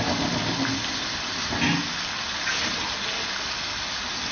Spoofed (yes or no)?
no